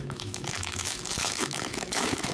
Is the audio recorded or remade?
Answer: remade